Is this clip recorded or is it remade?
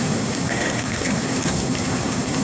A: remade